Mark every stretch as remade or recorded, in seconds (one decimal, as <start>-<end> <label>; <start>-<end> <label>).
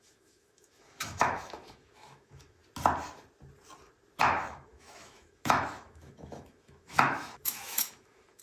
0.0-2.6 remade; 2.6-4.2 recorded; 4.2-8.4 remade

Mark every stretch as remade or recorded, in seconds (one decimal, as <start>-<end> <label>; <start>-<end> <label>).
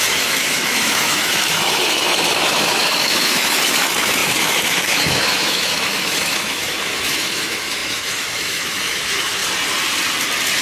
0.0-9.4 remade; 9.4-10.6 recorded